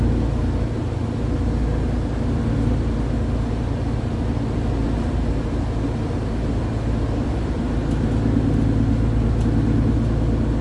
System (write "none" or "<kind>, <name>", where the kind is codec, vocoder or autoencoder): none